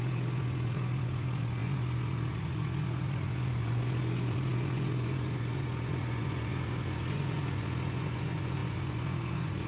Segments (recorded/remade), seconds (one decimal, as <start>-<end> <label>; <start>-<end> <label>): 0.0-9.7 remade